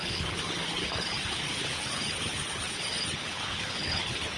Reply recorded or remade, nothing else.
remade